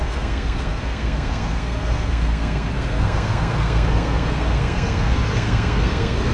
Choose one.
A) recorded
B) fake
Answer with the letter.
B